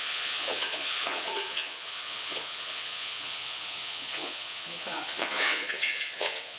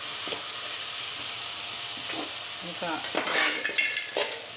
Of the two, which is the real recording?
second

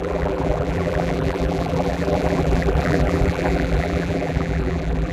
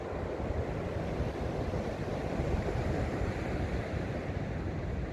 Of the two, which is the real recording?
second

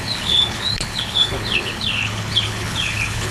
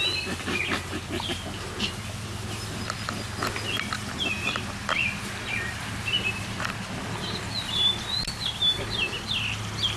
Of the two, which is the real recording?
second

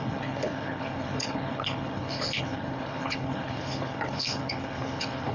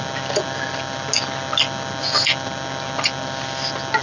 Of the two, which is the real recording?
second